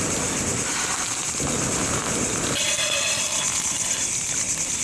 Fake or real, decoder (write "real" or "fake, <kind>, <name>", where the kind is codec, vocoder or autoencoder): real